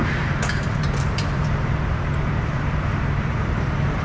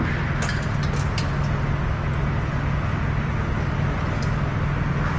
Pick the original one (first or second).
second